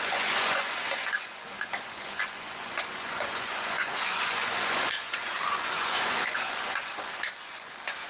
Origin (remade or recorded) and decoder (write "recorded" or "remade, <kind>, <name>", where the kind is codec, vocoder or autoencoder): remade, vocoder, Vocos